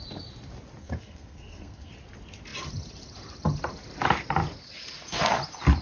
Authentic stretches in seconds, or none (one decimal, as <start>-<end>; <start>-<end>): 0.0-0.8; 1.9-5.8